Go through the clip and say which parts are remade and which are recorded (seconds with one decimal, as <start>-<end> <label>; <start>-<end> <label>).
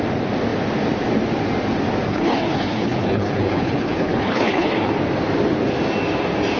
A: 0.0-2.1 recorded; 2.1-4.9 remade; 4.9-6.6 recorded